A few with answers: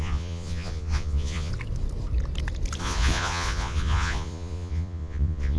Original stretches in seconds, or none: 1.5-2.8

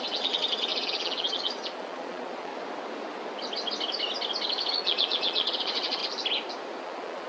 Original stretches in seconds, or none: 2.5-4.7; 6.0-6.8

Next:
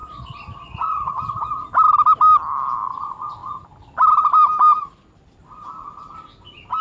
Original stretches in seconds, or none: 1.5-6.8

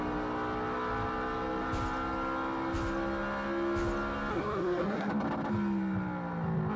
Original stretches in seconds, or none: 0.0-4.3; 5.1-6.8

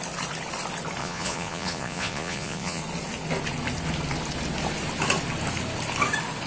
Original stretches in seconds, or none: 0.0-1.0; 2.8-6.5